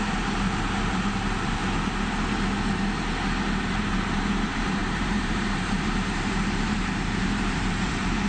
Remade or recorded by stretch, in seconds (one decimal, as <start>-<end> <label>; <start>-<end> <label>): 0.0-1.6 remade; 1.6-3.6 recorded; 3.6-8.3 remade